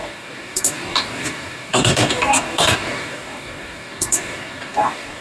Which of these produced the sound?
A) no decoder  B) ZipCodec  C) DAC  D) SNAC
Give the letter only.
C